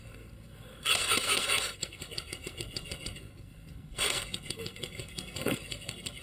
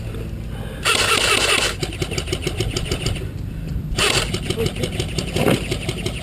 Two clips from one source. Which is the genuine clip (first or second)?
second